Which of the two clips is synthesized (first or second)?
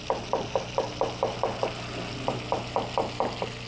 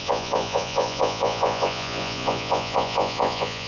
second